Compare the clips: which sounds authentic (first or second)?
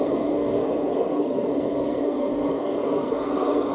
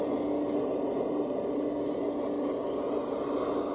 second